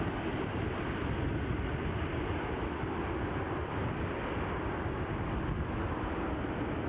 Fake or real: real